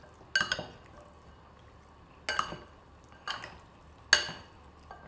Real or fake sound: real